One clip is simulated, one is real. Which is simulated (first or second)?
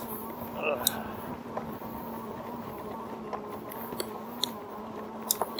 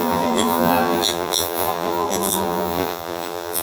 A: second